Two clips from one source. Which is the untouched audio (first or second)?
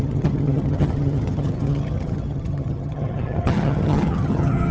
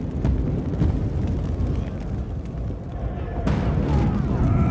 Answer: second